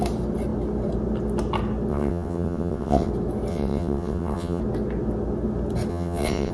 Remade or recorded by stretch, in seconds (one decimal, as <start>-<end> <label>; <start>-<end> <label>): 0.0-1.9 recorded; 1.9-3.1 remade; 3.1-3.5 recorded; 3.5-4.6 remade; 4.6-5.9 recorded; 5.9-6.5 remade